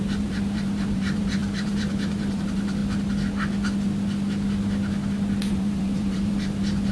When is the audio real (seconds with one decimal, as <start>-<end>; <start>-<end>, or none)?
2.8-5.5